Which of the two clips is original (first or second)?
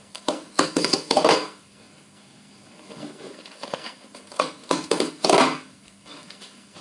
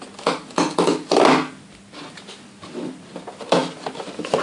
second